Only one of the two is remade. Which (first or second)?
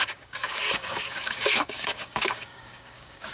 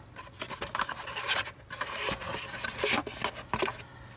first